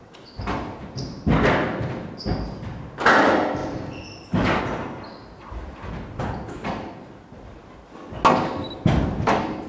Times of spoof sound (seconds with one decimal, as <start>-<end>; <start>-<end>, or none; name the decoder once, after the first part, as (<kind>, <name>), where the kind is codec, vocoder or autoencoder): none